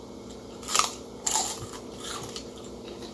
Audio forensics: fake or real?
fake